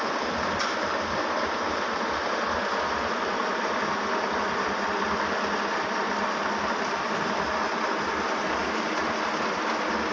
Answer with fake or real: real